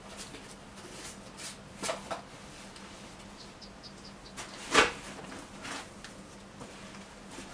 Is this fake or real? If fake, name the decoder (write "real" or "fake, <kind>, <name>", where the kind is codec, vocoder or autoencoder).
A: real